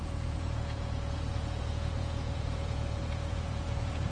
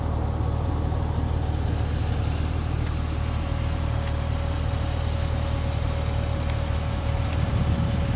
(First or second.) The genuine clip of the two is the second